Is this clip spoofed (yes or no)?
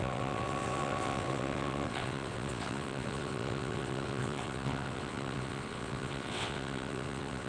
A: yes